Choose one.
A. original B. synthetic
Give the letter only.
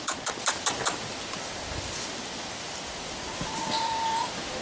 A